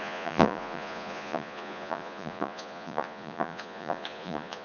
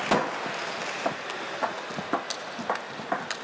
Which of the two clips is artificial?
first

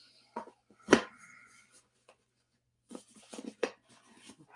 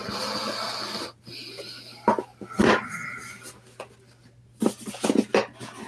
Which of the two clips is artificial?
first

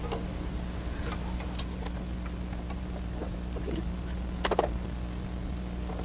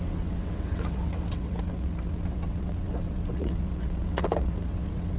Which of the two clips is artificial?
second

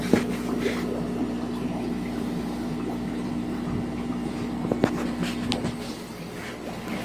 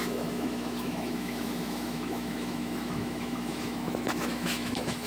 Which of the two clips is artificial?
second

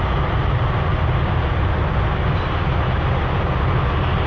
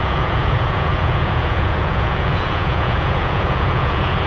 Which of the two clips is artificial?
second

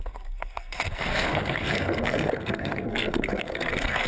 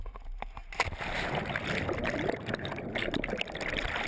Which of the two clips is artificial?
first